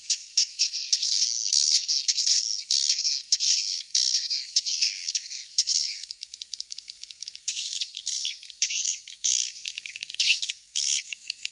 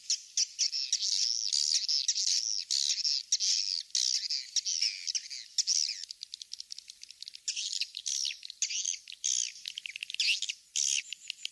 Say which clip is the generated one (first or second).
first